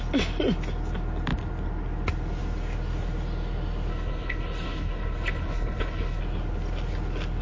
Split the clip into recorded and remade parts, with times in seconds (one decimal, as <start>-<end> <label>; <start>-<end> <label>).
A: 0.0-3.9 recorded; 3.9-6.2 remade; 6.2-7.4 recorded